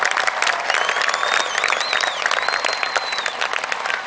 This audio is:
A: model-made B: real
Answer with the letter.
B